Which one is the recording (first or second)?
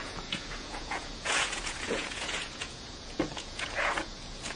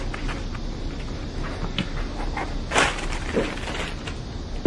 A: second